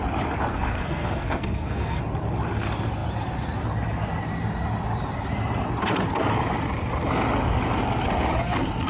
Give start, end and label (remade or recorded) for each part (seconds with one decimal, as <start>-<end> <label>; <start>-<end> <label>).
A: 0.0-0.5 recorded; 0.5-2.0 remade; 2.0-8.9 recorded